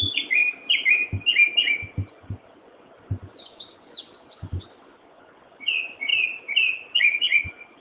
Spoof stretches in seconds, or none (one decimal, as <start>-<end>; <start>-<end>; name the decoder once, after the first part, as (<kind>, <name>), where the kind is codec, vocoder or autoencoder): 0.0-0.4 (vocoder, Vocos); 2.1-6.1; 7.0-7.8